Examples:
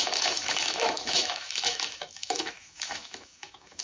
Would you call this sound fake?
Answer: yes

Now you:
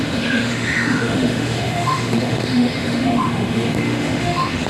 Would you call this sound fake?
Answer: yes